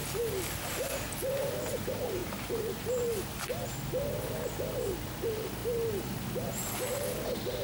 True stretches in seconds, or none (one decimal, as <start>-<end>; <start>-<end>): 0.0-7.6